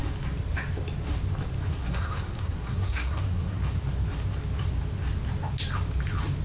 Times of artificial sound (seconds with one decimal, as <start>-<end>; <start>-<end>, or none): 1.7-3.6